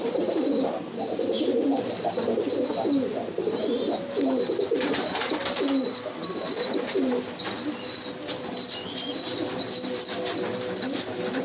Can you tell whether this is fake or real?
fake